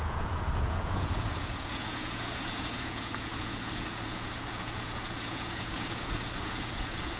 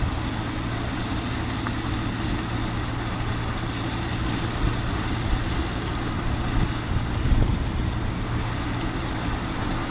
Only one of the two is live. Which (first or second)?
second